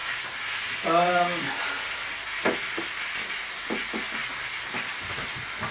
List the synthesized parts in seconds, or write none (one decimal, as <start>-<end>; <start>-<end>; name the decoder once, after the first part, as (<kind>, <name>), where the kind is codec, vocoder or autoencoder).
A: none